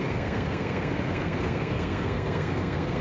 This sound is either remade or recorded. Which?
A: remade